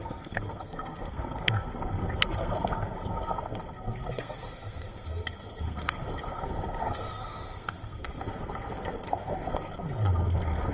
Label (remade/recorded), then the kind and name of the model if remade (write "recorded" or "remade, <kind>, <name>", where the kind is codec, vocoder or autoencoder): remade, codec, SNAC